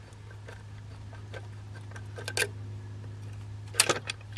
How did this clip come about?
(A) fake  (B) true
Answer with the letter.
B